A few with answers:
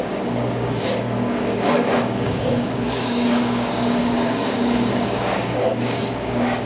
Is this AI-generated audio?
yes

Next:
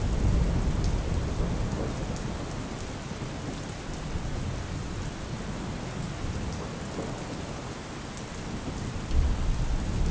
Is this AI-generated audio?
no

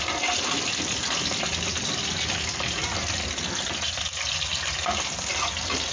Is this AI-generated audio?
no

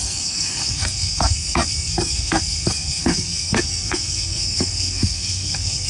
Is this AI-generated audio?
yes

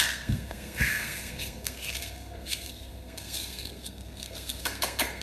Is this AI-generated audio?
yes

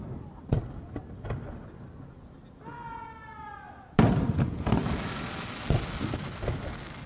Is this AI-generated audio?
no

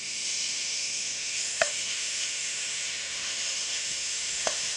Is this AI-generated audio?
yes